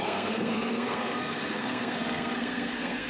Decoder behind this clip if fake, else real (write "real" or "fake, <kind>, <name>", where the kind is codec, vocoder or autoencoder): fake, codec, SNAC